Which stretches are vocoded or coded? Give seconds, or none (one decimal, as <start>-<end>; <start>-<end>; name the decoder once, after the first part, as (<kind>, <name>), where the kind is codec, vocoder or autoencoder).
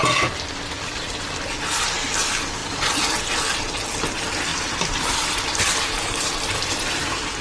4.5-5.0 (vocoder, BigVGAN v2)